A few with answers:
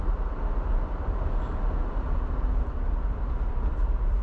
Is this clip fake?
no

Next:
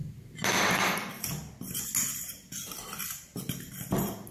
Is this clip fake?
no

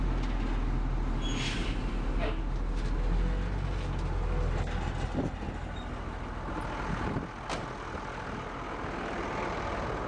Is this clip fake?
no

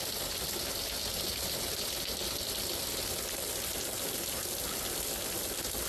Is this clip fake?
no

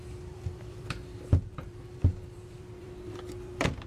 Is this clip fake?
yes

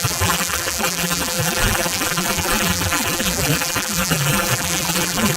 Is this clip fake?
yes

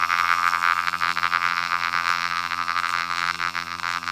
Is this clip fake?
yes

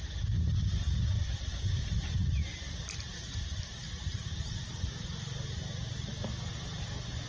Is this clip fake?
yes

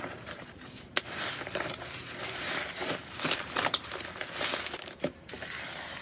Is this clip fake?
yes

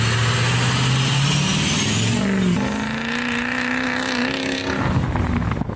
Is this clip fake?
no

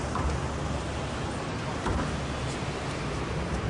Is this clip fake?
no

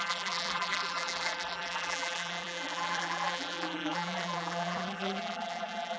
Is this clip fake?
yes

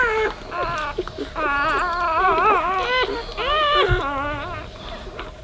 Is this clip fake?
no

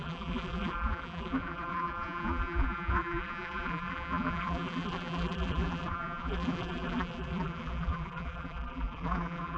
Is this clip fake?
yes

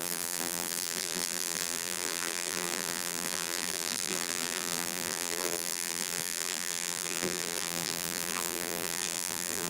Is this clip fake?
yes